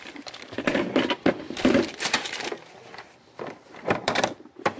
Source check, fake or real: fake